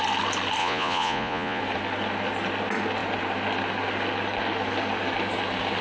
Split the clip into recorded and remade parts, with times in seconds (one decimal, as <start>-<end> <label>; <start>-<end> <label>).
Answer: 0.0-0.6 recorded; 0.6-1.6 remade; 1.6-5.8 recorded